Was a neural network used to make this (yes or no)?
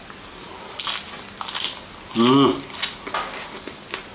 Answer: no